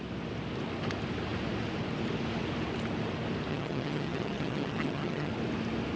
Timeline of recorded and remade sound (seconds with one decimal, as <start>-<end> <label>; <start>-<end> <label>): 0.0-3.5 recorded; 3.5-5.3 remade; 5.3-6.0 recorded